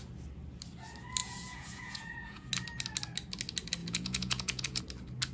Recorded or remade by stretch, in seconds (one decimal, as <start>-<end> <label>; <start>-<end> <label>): 0.0-1.2 recorded; 1.2-2.5 remade; 2.5-3.8 recorded; 3.8-4.8 remade; 4.8-5.3 recorded